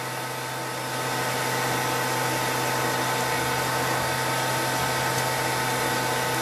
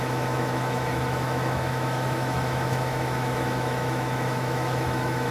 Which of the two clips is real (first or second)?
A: first